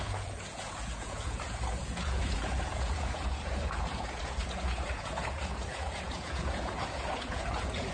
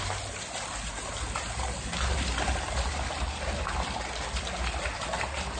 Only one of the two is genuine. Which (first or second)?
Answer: second